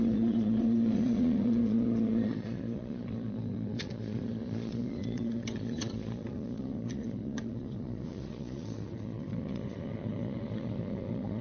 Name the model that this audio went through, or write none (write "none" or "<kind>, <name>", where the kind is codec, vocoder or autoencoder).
vocoder, Vocos